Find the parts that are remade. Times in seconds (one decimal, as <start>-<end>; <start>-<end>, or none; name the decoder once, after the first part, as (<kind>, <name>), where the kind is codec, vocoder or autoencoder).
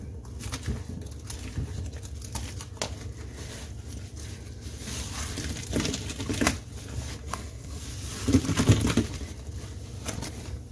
7.2-7.8 (codec, SNAC)